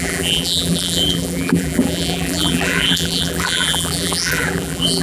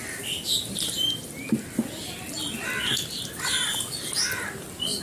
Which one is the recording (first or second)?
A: second